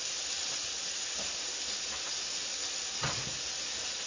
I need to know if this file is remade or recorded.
recorded